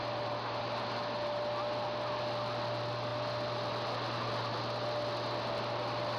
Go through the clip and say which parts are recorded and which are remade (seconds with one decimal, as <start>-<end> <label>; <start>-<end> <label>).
0.0-6.2 recorded

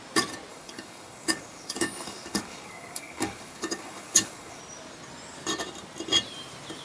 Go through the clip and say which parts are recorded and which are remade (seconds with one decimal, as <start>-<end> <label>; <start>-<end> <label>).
0.0-0.5 recorded; 0.5-4.6 remade; 4.6-6.8 recorded

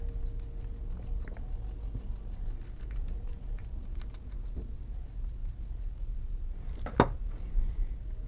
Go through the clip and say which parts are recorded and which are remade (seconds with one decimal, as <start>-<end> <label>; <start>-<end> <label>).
0.0-8.3 recorded

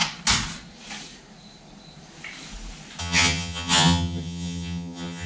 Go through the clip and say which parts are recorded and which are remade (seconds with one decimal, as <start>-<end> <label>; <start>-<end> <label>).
0.0-3.0 recorded; 3.0-5.3 remade

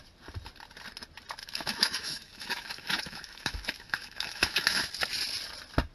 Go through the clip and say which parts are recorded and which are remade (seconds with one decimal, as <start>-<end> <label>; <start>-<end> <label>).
0.0-1.4 recorded; 1.4-4.9 remade; 4.9-5.9 recorded